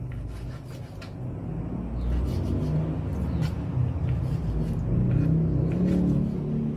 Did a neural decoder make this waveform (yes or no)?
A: no